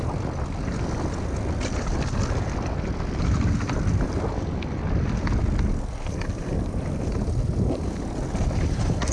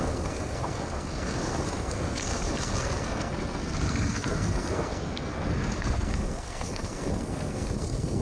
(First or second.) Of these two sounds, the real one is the first